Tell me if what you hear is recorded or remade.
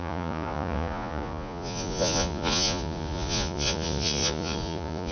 remade